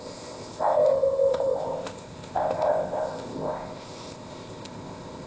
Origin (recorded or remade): remade